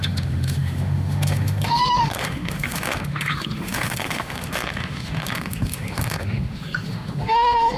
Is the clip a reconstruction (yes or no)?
yes